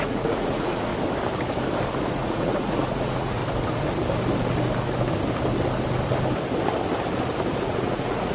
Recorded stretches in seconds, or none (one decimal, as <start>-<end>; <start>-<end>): 0.9-2.1; 3.4-7.6